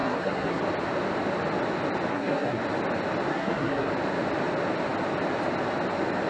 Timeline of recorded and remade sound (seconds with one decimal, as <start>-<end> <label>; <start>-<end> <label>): 0.0-0.6 remade; 0.6-2.1 recorded; 2.1-2.6 remade; 2.6-3.3 recorded; 3.3-3.9 remade; 3.9-6.3 recorded